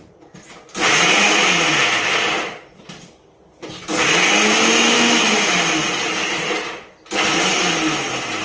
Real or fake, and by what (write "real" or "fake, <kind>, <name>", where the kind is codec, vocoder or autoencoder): real